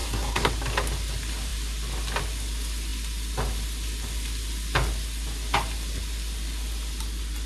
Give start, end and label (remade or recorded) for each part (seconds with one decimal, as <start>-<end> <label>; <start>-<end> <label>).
0.0-0.5 remade; 0.5-7.5 recorded